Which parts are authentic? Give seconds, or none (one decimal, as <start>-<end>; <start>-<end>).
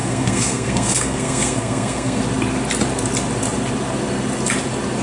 2.2-5.0